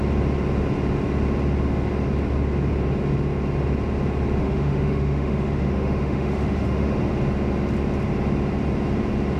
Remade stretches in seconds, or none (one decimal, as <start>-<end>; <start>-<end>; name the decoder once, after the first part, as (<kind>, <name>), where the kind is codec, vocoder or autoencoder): 4.4-7.0 (autoencoder, DAC-VAE)